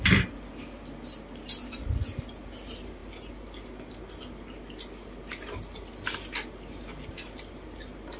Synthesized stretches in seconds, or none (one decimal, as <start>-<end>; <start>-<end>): none